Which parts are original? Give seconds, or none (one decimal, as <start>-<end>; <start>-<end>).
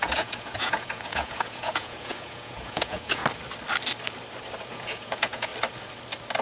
3.2-4.7; 5.5-6.4